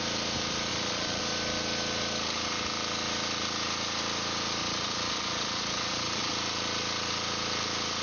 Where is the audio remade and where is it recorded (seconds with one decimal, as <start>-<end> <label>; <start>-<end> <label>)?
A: 0.0-0.7 recorded; 0.7-1.2 remade; 1.2-4.6 recorded; 4.6-6.3 remade; 6.3-8.0 recorded